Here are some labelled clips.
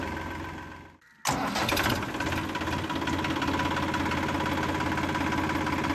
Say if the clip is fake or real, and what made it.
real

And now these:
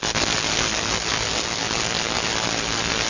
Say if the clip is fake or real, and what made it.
real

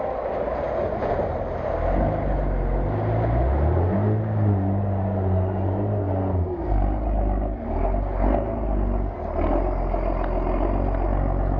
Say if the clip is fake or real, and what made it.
real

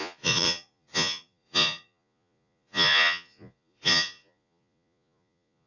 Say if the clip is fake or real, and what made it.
fake, vocoder, Vocos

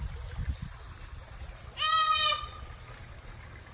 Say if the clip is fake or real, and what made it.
real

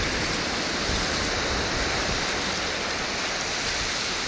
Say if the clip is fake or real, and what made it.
real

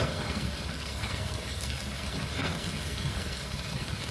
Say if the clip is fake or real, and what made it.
fake, codec, SNAC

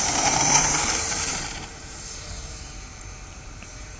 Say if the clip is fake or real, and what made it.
fake, vocoder, BigVGAN v2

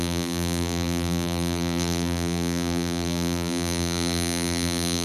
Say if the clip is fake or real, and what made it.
fake, vocoder, BigVGAN v2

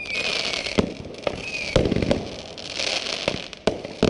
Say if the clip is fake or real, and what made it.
real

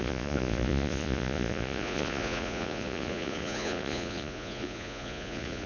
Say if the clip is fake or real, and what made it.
fake, vocoder, Vocos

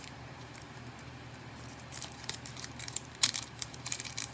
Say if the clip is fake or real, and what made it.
fake, vocoder, BigVGAN v2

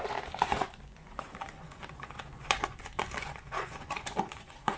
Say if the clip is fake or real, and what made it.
fake, vocoder, Vocos